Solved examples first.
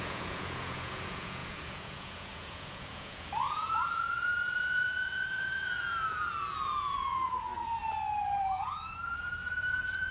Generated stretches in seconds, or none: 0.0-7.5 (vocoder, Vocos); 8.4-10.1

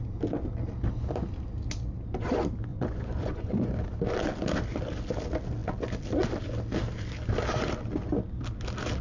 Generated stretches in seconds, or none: 2.7-3.8 (vocoder, Vocos)

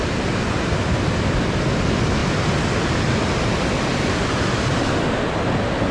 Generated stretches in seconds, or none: none

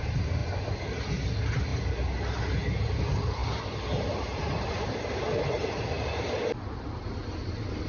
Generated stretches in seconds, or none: none

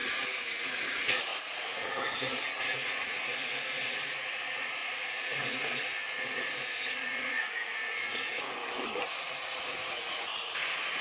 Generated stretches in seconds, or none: 0.5-1.3 (vocoder, Vocos); 2.6-8.6; 9.2-11.0

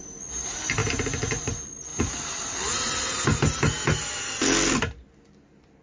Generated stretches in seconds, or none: none

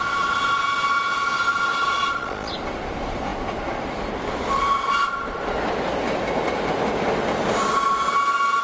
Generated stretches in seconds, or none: 1.7-2.5 (vocoder, Vocos)